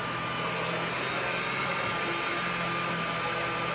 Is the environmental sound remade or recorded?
recorded